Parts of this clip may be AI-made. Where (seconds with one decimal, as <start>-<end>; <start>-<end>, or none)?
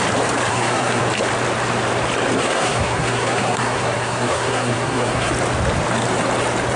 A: 0.5-1.0; 2.4-5.3